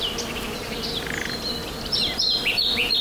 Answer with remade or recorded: recorded